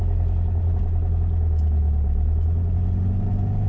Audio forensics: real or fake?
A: real